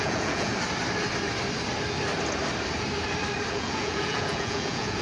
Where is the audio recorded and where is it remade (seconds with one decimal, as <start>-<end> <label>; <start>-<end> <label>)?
0.0-0.5 remade; 0.5-3.5 recorded; 3.5-5.0 remade